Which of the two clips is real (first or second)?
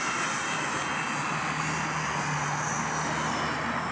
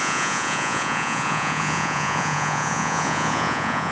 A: first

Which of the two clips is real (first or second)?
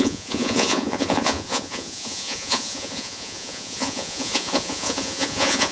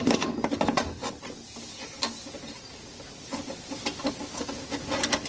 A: second